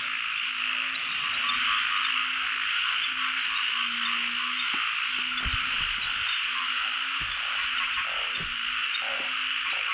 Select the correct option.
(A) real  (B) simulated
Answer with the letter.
A